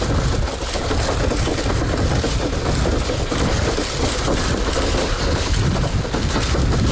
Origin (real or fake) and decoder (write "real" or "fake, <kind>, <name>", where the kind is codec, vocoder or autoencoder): real